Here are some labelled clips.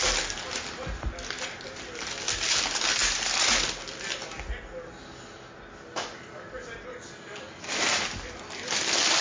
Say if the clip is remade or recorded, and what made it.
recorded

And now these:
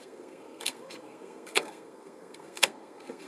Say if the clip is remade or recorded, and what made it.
remade, codec, SNAC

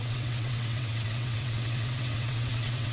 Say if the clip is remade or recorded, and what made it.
remade, vocoder, WaveNeXt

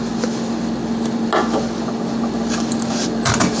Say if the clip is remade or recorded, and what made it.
recorded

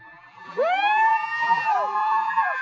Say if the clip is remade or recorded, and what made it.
remade, vocoder, BigVGAN v2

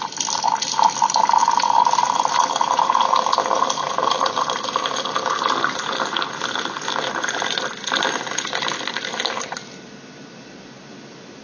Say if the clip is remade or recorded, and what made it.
recorded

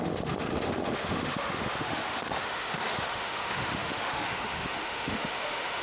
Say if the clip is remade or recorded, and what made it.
remade, autoencoder, DAC-VAE